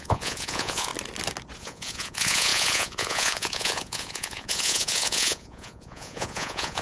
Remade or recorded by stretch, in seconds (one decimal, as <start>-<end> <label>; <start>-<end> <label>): 0.0-0.9 remade; 0.9-1.6 recorded; 1.6-6.8 remade